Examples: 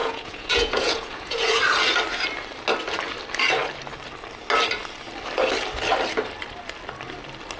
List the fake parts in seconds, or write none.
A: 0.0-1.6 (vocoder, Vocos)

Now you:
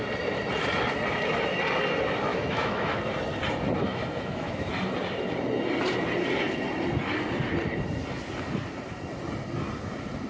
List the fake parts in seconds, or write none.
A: 2.3-3.0 (autoencoder, DAC-VAE); 3.8-4.7

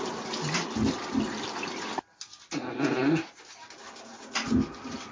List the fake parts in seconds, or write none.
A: none

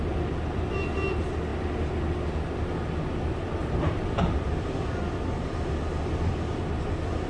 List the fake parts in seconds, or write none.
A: none

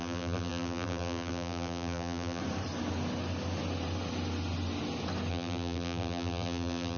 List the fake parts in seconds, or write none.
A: 0.0-2.4 (vocoder, BigVGAN v2); 5.3-7.0

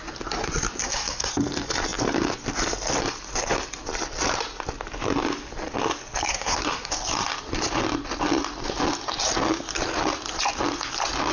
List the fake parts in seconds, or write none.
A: 0.8-1.3 (codec, SNAC); 6.3-6.9

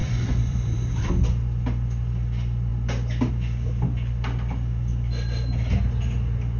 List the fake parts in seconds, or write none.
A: 0.0-1.1 (vocoder, BigVGAN v2); 4.9-5.5